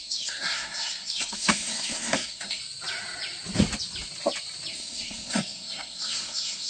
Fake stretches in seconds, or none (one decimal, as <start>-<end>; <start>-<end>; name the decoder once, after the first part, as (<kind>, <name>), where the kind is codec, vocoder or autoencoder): 0.0-2.6 (codec, SNAC); 4.7-6.7

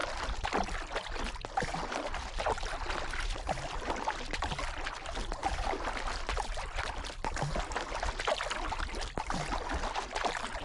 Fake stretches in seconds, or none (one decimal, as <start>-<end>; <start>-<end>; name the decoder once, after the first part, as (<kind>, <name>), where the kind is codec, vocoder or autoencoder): none

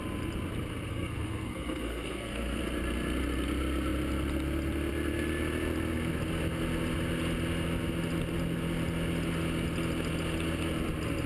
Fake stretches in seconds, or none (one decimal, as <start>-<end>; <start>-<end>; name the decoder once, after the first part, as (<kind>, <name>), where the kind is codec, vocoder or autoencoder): 0.9-2.6 (codec, SNAC)

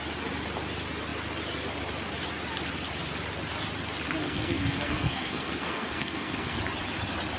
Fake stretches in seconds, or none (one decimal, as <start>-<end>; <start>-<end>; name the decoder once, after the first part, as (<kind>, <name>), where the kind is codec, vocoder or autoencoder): 4.2-6.6 (codec, SNAC)